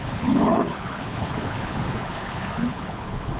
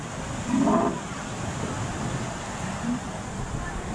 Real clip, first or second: second